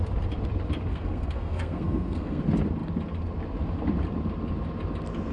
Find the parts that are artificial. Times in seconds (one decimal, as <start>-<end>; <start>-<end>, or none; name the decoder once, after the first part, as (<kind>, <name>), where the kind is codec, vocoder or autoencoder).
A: 0.9-2.4 (codec, SNAC)